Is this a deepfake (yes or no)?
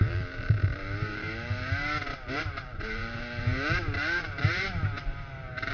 yes